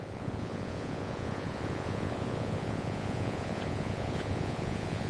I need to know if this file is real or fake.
fake